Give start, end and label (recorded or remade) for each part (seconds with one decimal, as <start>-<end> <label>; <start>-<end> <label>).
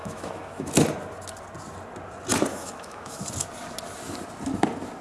0.0-0.7 remade; 0.7-2.5 recorded; 2.5-3.2 remade; 3.2-5.0 recorded